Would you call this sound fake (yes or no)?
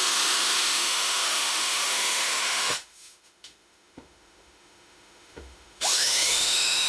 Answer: yes